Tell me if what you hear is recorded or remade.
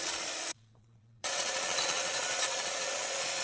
remade